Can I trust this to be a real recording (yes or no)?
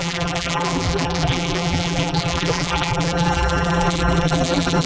no